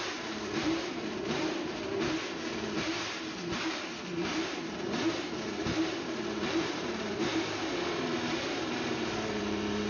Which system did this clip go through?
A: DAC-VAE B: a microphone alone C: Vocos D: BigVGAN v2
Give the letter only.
D